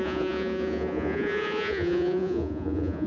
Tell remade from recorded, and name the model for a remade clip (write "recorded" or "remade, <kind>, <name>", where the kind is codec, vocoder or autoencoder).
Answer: remade, vocoder, Vocos